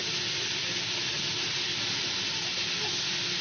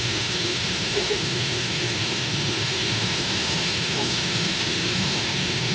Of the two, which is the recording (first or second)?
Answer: first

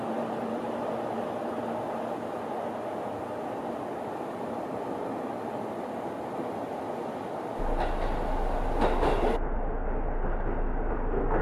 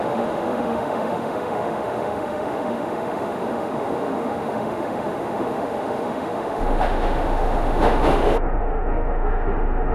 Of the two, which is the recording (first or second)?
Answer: first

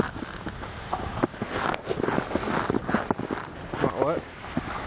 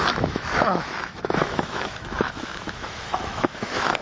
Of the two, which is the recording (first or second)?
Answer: first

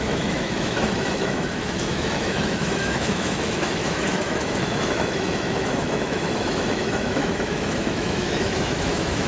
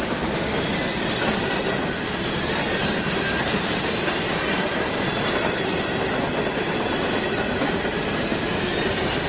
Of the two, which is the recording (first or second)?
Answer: second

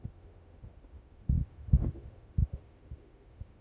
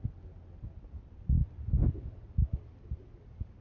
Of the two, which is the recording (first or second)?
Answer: second